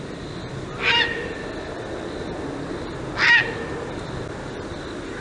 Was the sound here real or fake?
real